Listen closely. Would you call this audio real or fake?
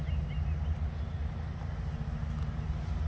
real